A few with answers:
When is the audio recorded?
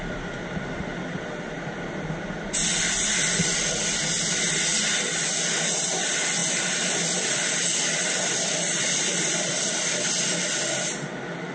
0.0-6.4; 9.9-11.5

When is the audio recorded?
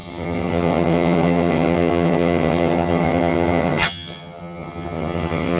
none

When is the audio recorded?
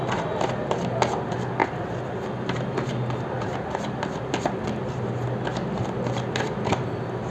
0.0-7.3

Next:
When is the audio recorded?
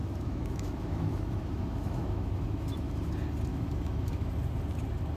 3.1-3.5; 4.3-5.2